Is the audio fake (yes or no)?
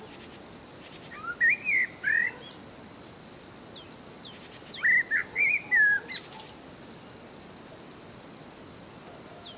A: no